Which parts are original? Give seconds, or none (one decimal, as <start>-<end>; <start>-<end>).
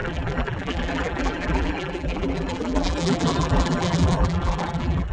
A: none